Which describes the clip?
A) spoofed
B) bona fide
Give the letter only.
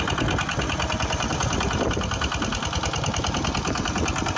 B